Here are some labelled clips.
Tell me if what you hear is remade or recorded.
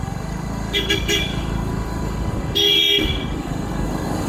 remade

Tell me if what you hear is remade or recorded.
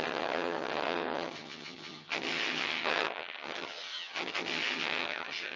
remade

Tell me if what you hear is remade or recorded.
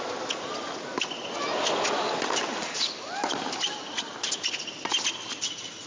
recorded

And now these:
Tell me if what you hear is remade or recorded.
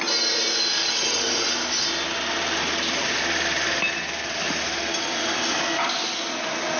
recorded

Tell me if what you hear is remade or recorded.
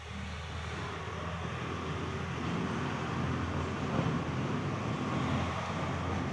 recorded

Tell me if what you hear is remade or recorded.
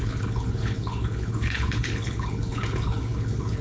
remade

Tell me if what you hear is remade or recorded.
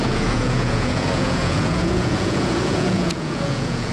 remade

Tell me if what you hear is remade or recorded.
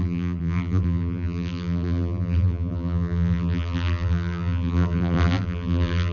remade